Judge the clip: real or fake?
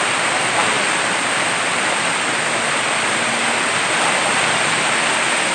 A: real